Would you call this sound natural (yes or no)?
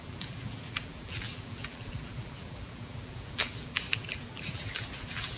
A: no